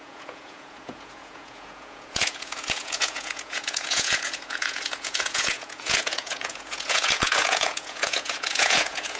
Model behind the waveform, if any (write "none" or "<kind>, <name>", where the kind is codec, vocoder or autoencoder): vocoder, Vocos